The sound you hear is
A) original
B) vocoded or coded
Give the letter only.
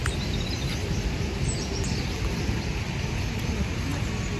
A